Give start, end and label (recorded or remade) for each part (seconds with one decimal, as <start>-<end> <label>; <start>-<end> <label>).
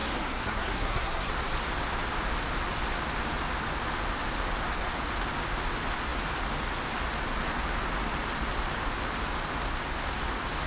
0.0-1.3 remade; 1.3-10.7 recorded